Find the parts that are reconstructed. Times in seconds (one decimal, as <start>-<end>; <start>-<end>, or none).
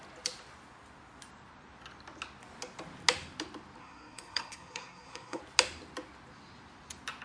3.8-5.4